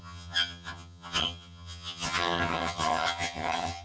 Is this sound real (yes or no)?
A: no